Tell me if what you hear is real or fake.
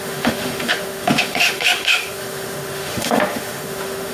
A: fake